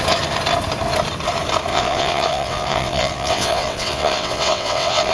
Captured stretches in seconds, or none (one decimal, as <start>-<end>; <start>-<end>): 0.0-1.7